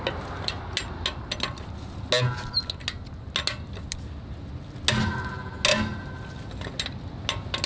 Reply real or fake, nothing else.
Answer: real